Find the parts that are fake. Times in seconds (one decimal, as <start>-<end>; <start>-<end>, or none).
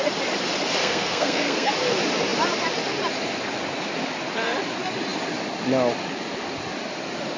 0.8-1.7